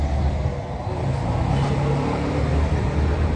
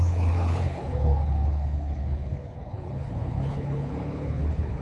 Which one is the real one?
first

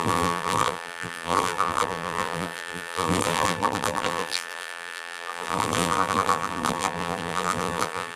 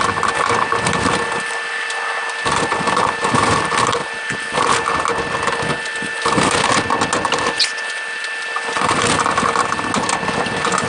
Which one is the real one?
second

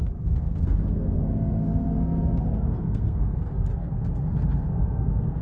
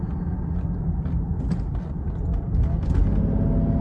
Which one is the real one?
second